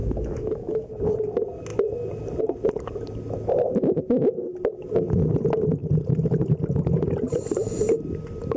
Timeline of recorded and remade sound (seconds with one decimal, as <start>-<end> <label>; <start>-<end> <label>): 0.0-0.9 remade; 0.9-8.6 recorded